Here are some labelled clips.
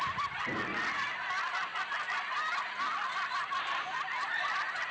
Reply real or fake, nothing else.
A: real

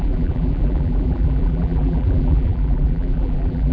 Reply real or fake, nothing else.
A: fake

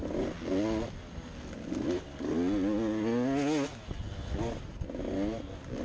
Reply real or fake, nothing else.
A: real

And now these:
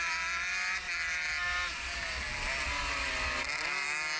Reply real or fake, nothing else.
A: real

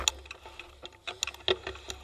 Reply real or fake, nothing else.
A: real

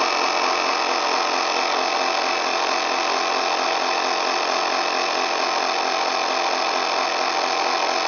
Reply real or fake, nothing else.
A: real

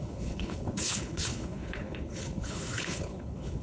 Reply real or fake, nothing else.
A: fake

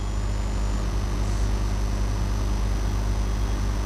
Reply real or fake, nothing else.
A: real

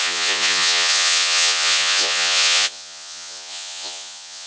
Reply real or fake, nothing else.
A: fake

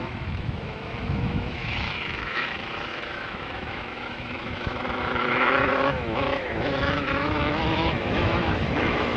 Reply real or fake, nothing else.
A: fake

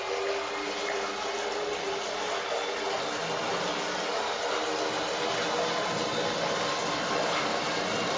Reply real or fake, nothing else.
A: real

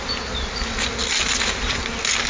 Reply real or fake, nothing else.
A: real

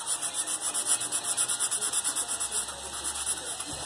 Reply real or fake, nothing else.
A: real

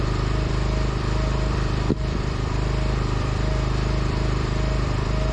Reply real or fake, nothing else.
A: fake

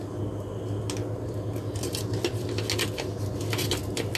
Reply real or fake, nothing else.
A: real